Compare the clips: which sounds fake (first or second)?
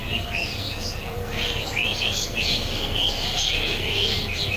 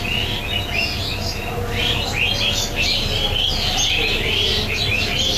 first